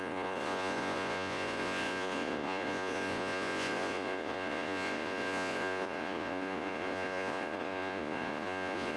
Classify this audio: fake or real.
fake